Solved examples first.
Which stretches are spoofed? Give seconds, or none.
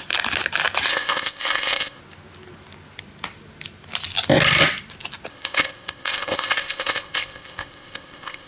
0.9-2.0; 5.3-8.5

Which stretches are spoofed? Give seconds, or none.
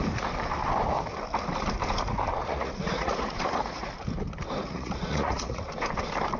2.4-3.9; 4.6-5.6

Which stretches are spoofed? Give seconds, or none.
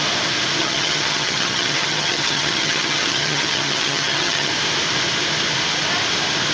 0.6-4.5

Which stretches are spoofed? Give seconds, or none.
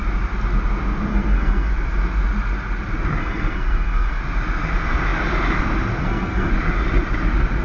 1.1-1.7; 3.2-4.2; 6.0-6.5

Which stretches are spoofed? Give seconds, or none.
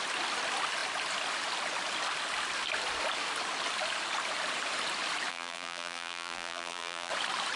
5.3-7.1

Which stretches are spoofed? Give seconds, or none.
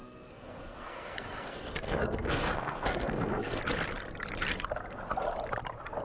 0.0-3.6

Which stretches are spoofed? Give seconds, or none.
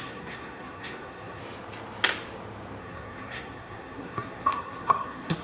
0.0-1.4; 2.8-5.4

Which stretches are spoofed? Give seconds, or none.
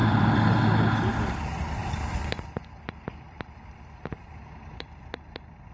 0.0-1.1; 1.8-5.1